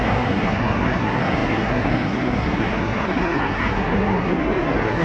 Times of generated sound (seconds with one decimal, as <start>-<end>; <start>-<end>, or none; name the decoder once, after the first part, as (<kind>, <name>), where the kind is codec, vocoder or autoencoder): 0.0-5.0 (codec, SNAC)